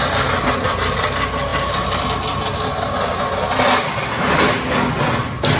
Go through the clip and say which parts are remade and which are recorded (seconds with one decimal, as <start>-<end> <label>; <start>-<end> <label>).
0.0-5.6 recorded